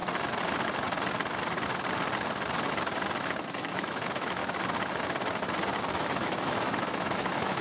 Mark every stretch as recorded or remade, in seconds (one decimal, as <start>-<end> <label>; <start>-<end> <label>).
0.0-3.6 recorded; 3.6-4.4 remade; 4.4-5.9 recorded; 5.9-7.6 remade